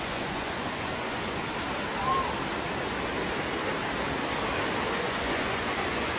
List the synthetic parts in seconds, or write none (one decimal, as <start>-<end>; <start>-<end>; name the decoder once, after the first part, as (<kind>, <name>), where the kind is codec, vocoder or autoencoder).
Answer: 0.0-1.4 (vocoder, Vocos); 4.9-6.2